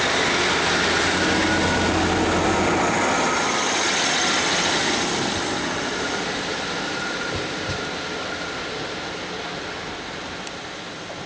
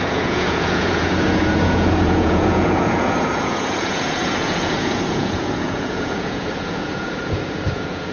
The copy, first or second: second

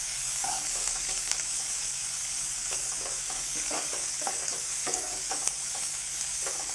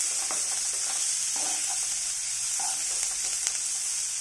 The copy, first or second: first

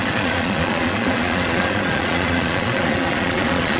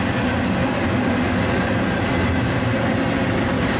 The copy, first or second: first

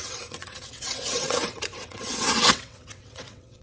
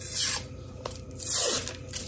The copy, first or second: first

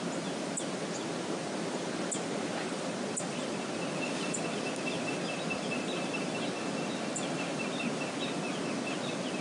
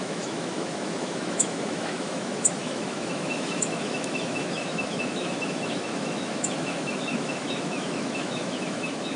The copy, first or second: second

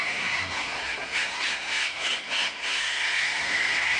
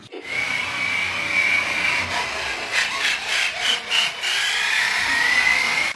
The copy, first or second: first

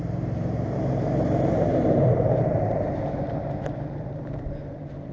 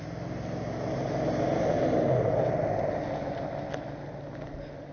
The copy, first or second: first